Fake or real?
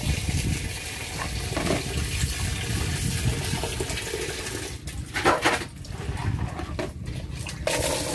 real